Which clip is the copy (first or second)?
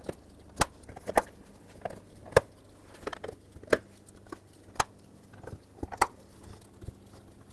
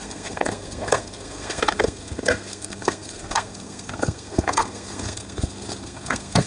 second